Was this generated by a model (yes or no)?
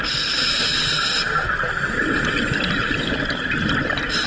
no